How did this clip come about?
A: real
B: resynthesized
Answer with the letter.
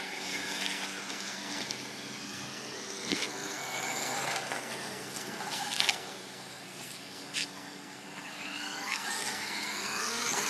B